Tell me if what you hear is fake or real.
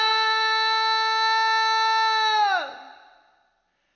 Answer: real